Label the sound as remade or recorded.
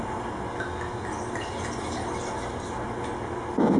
recorded